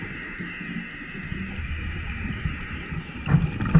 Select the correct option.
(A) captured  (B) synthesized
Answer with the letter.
A